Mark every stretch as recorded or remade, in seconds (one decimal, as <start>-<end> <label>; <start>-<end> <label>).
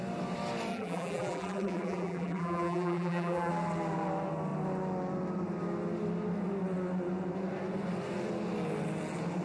0.0-0.7 recorded; 0.7-3.5 remade; 3.5-9.4 recorded